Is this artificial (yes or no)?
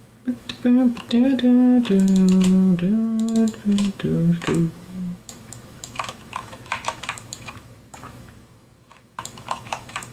yes